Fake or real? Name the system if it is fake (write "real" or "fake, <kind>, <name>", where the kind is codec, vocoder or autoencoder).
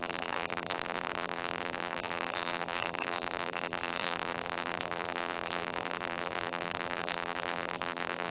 fake, vocoder, BigVGAN v2